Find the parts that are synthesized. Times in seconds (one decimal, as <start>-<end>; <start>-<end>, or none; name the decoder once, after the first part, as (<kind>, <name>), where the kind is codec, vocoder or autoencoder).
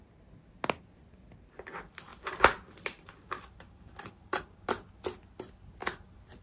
2.1-4.4 (vocoder, BigVGAN v2); 5.8-6.4